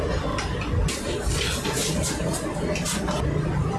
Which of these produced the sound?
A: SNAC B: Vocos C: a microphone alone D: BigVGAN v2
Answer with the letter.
C